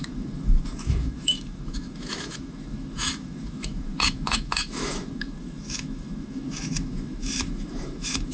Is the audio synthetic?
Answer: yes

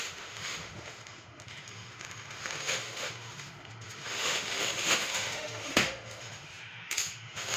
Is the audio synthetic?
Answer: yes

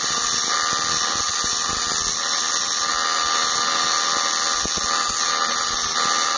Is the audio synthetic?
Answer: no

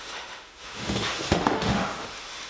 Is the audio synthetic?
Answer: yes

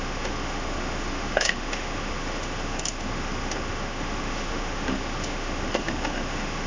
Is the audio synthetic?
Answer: yes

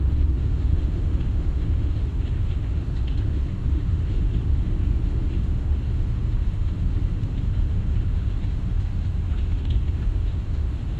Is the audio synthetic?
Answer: yes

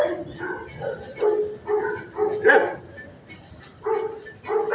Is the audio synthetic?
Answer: no